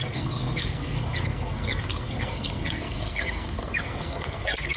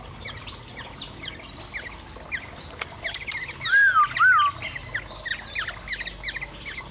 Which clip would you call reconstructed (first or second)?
first